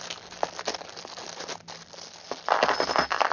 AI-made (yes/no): no